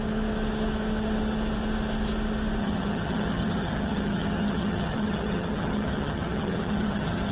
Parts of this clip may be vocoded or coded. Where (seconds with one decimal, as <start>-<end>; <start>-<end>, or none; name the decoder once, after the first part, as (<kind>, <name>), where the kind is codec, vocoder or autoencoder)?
2.6-7.3 (vocoder, HiFi-GAN)